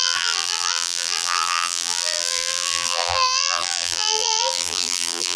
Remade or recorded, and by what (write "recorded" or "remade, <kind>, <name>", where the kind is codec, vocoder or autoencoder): remade, vocoder, BigVGAN v2